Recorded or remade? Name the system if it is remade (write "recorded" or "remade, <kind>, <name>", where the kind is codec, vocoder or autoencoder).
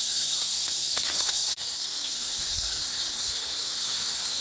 remade, codec, SNAC